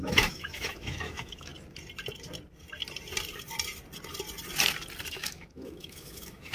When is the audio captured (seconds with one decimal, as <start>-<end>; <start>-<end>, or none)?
1.5-5.1